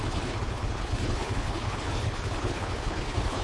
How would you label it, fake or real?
fake